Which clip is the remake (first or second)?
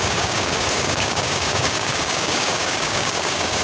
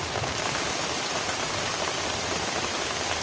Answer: first